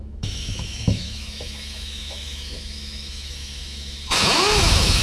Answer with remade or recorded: remade